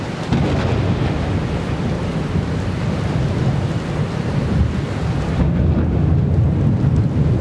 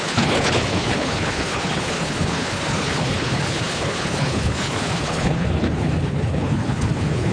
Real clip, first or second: first